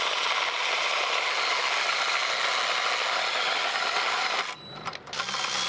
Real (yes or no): yes